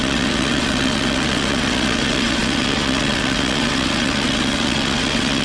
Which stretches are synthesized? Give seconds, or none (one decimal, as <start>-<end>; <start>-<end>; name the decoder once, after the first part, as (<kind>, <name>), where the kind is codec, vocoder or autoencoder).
0.0-5.4 (vocoder, WaveNeXt)